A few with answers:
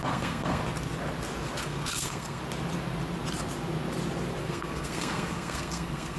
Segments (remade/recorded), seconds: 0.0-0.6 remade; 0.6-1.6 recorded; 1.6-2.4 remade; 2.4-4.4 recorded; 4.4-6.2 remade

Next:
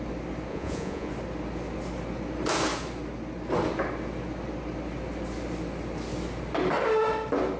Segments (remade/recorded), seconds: 0.0-0.5 recorded; 0.5-1.1 remade; 1.1-7.6 recorded

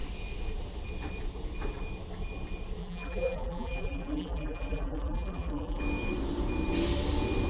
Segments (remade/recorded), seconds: 0.0-2.8 recorded; 2.8-5.8 remade; 5.8-7.5 recorded